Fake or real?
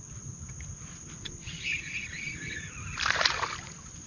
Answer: real